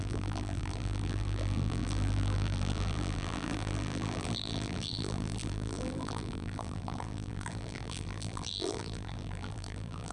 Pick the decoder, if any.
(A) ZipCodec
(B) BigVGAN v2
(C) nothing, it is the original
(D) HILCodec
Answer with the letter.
B